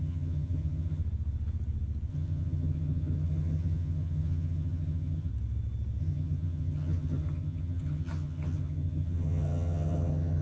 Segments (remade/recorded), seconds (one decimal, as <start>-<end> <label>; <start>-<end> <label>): 0.0-1.0 remade; 1.0-2.1 recorded; 2.1-5.3 remade; 5.3-6.0 recorded; 6.0-10.4 remade